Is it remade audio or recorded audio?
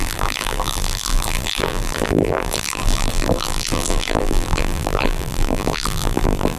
remade